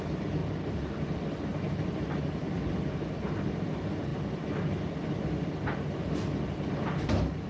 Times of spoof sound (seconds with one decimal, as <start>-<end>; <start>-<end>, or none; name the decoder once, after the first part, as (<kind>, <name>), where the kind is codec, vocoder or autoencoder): none